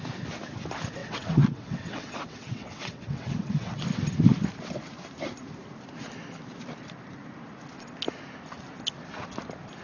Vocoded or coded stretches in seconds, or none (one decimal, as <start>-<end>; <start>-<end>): 1.0-3.8